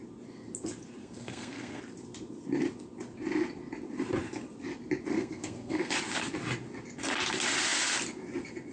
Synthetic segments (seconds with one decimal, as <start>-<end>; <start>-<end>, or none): 1.0-1.8; 5.1-5.9

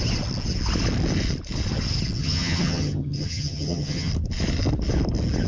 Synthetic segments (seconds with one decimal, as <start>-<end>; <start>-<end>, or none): 2.2-4.1

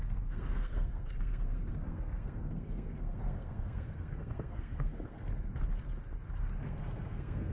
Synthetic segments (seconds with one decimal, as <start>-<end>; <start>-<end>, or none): 0.0-5.3; 6.6-7.5

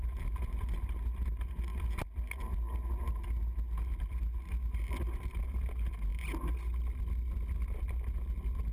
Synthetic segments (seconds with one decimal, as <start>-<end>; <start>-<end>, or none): none

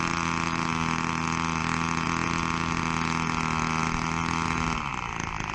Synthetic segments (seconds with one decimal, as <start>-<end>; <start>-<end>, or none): none

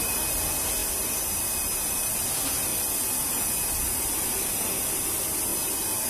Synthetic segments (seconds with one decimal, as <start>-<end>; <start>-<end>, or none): none

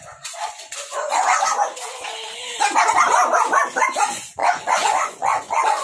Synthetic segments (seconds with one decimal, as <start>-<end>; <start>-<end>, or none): 0.0-1.1; 3.8-5.8

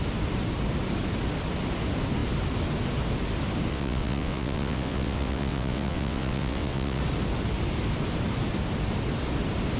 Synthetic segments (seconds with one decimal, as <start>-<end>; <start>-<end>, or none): 3.7-7.0